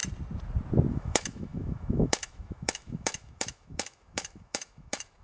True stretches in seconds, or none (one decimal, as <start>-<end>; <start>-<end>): 0.0-0.9